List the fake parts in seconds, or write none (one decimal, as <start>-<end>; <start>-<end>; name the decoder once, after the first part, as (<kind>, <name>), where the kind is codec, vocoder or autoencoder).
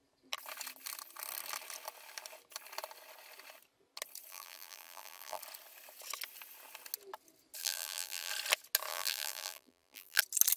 4.3-5.4 (vocoder, BigVGAN v2); 7.6-8.3; 8.9-10.2